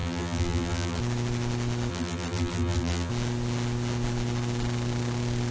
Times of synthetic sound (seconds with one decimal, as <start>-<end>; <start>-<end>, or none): 0.0-1.0; 1.9-3.1